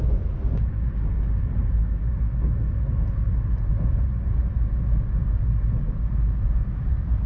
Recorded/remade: remade